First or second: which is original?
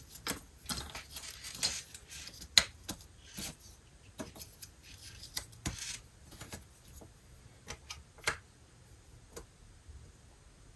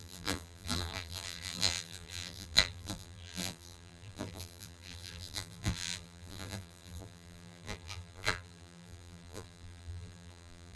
first